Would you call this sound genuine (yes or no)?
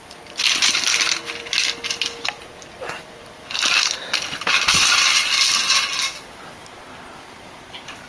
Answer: yes